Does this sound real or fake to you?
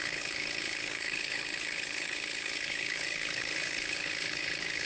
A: fake